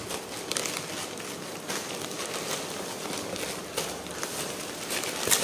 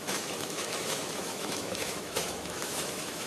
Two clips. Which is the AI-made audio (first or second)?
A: second